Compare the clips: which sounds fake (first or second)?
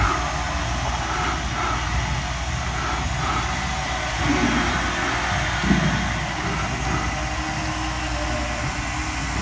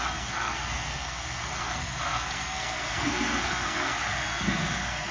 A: second